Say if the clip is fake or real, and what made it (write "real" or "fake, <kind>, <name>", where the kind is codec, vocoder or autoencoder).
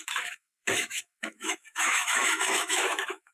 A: fake, autoencoder, DAC-VAE